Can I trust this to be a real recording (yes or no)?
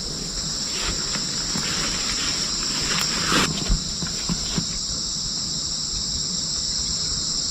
yes